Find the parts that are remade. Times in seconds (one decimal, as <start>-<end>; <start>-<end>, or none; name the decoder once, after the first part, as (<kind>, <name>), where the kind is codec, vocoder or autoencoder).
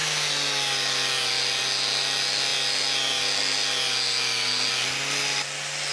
none